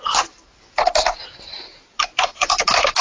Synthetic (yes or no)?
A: no